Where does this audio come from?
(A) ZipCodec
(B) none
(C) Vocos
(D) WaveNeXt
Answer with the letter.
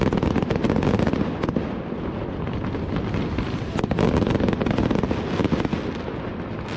B